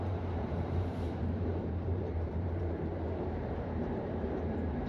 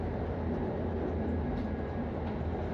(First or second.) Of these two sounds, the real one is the second